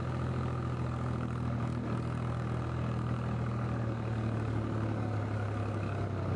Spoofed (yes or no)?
yes